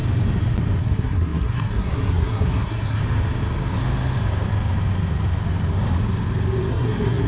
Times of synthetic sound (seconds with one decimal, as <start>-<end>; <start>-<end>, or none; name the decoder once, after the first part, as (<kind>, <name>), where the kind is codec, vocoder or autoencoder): 0.8-3.0 (codec, SNAC); 6.7-7.3